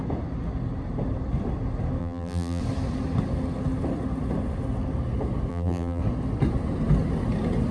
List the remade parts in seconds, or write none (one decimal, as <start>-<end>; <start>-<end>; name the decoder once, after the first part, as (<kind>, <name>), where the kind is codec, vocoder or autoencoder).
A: 2.0-2.6 (vocoder, BigVGAN v2); 5.5-6.0

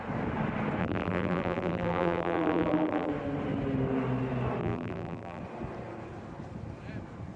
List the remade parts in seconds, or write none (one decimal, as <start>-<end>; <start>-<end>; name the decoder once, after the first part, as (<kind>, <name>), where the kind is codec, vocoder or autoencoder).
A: 0.8-3.1 (vocoder, BigVGAN v2); 4.6-5.4

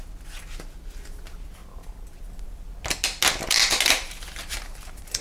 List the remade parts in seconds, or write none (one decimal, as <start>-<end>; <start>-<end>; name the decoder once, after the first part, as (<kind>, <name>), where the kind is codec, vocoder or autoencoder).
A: none

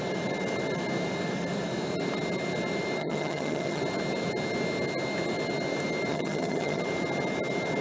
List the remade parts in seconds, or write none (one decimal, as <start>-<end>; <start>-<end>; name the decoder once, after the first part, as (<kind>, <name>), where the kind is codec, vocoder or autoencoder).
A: 3.0-3.8 (vocoder, HiFi-GAN); 6.1-6.8

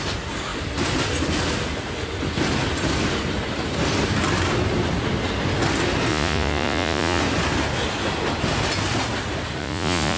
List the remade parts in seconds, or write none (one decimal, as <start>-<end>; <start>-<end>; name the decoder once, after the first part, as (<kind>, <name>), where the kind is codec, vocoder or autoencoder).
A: 6.1-7.2 (vocoder, Vocos); 9.6-10.2

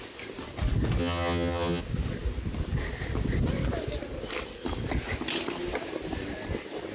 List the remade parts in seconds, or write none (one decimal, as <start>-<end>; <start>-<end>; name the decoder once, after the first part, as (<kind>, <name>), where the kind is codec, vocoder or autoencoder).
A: 1.0-1.8 (vocoder, HiFi-GAN)

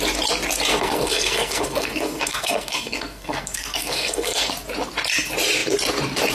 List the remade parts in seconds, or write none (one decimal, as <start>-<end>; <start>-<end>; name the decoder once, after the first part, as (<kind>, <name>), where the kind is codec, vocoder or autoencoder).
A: 0.7-4.5 (codec, SNAC)